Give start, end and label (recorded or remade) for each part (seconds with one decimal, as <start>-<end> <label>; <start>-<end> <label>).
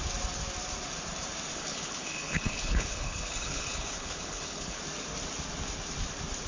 0.0-1.5 recorded; 1.5-4.8 remade; 4.8-6.5 recorded